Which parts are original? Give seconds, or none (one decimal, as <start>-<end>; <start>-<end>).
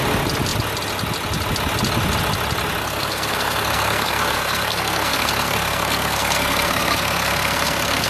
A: 0.0-2.8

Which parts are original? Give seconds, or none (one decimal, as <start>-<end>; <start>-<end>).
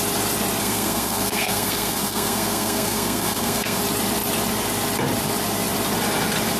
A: 0.0-0.6; 3.8-6.6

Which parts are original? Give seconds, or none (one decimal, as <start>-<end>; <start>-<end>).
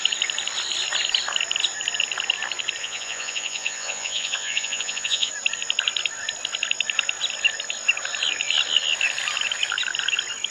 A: 0.0-2.8; 5.3-10.5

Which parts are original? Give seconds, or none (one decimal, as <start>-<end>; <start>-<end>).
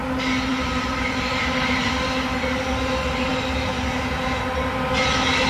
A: 0.0-0.5; 1.9-5.5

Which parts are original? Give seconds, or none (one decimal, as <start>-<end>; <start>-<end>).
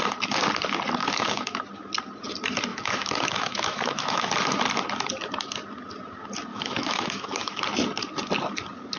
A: 0.0-1.0; 1.6-2.7; 4.3-6.5; 7.6-9.0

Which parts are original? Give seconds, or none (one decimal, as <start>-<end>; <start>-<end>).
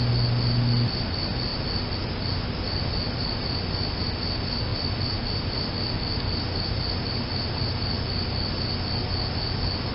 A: 0.0-9.9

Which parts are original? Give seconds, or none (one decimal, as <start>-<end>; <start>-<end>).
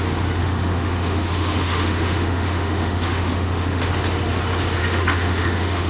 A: 0.0-0.4; 3.9-4.8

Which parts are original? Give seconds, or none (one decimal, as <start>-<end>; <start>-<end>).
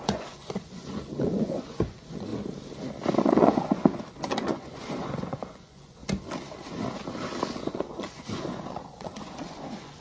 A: 2.3-3.1; 6.0-7.6